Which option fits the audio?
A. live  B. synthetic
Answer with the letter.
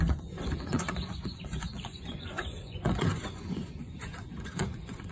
B